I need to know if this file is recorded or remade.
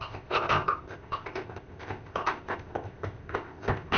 remade